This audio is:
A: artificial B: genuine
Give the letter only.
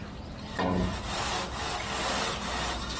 B